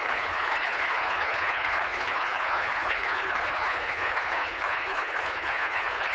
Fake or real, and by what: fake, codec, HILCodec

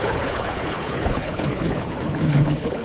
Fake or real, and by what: fake, codec, HILCodec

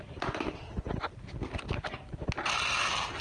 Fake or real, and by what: real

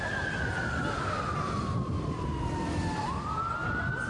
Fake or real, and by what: real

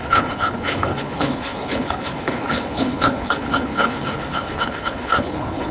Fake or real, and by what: fake, codec, HILCodec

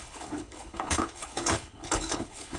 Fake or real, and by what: fake, codec, HILCodec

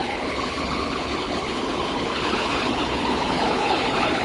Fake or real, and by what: fake, codec, HILCodec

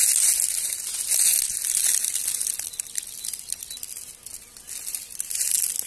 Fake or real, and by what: real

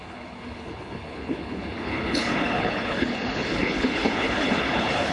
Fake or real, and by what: fake, codec, HILCodec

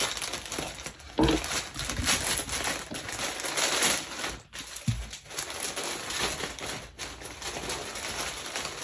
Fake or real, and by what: real